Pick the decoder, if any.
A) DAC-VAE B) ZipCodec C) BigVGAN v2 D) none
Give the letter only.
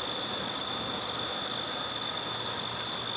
D